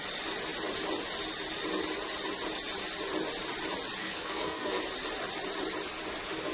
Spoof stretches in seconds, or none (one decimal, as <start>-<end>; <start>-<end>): 4.0-4.8